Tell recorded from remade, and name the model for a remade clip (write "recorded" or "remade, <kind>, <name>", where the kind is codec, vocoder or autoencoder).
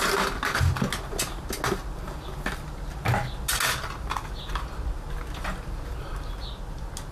recorded